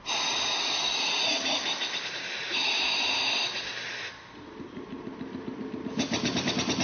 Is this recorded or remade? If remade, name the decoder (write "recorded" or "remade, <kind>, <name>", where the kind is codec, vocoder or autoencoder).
recorded